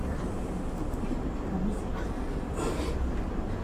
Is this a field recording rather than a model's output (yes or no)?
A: yes